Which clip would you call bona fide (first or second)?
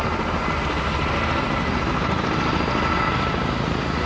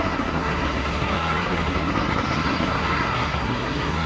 first